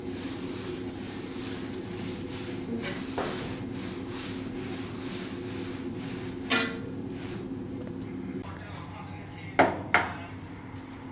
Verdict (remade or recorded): recorded